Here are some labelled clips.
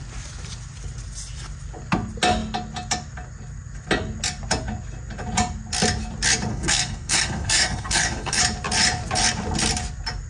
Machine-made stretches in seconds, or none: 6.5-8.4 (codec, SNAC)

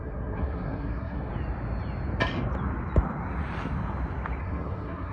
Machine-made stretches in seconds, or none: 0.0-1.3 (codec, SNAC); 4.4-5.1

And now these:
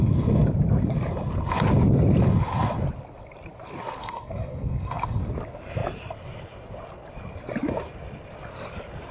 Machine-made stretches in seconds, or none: 4.0-5.2 (codec, SNAC)